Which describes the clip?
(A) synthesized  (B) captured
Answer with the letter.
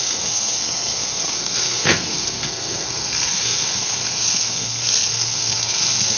A